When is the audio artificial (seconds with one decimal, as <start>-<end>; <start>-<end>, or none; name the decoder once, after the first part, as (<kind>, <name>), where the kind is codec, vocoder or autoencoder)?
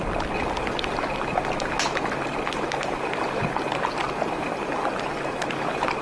4.0-6.0 (vocoder, BigVGAN v2)